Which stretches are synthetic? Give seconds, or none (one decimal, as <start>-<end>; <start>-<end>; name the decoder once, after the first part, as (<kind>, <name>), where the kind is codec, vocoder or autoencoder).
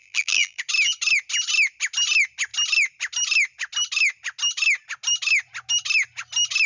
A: 0.0-0.6 (vocoder, BigVGAN v2)